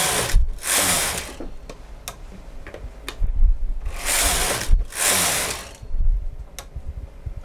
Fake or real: real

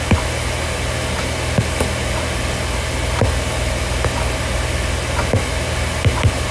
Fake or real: real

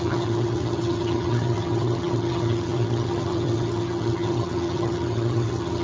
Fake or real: fake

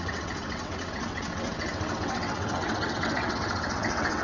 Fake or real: fake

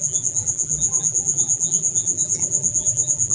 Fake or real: fake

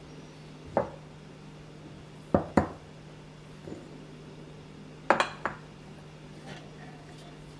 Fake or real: real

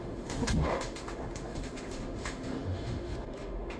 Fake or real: fake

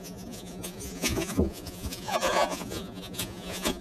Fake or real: fake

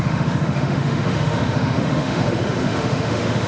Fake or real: fake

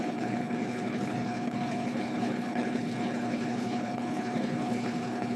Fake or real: fake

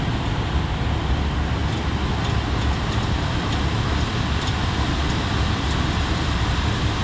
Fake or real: real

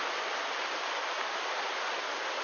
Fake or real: real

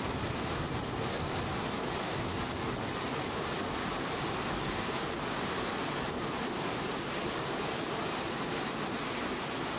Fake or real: real